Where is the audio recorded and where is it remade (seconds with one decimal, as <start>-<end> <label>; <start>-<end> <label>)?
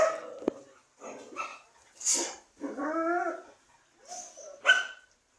0.0-5.4 recorded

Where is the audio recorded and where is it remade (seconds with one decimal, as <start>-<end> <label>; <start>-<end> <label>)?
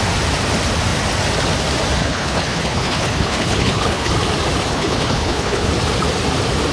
0.0-2.0 recorded; 2.0-4.1 remade; 4.1-4.7 recorded; 4.7-5.7 remade; 5.7-6.7 recorded